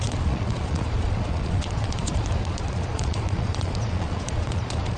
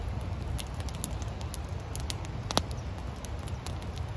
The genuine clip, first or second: second